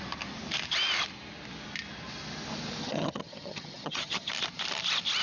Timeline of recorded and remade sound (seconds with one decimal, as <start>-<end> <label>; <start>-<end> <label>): 0.0-2.8 recorded; 2.8-4.3 remade; 4.3-5.2 recorded